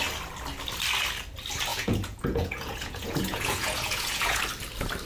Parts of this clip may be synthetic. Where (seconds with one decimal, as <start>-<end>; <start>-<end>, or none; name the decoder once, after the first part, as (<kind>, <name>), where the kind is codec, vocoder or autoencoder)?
1.7-4.4 (vocoder, Vocos)